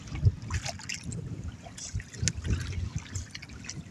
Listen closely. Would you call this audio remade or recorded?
recorded